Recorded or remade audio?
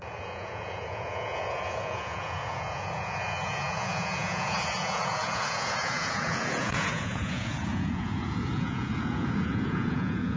remade